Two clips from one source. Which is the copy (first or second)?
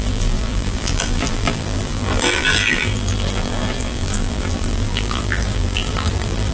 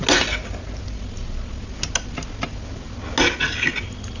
first